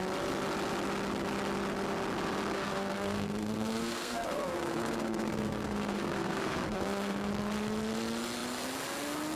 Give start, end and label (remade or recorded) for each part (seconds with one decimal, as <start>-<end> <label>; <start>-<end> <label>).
0.0-2.5 recorded; 2.5-7.3 remade; 7.3-9.4 recorded